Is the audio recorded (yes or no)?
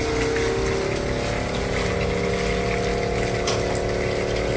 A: yes